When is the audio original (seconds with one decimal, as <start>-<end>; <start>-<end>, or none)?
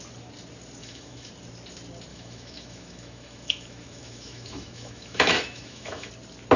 0.0-0.8; 1.3-2.1; 6.1-6.6